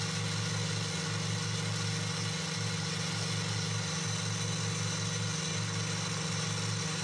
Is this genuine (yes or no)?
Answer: yes